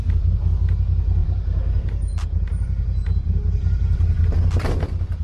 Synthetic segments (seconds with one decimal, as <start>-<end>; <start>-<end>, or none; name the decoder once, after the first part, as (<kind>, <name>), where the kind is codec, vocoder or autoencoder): none